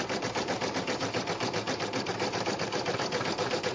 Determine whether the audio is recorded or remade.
remade